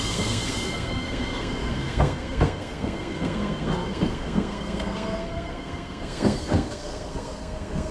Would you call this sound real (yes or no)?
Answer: no